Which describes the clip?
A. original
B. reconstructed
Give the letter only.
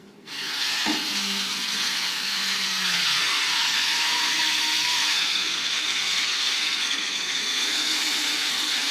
B